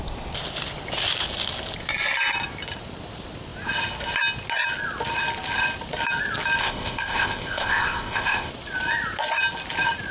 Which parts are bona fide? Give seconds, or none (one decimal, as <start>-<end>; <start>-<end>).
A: 0.0-6.6; 8.5-10.1